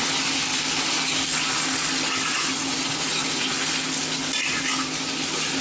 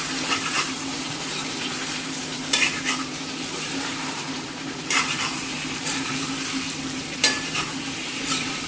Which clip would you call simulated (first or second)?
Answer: second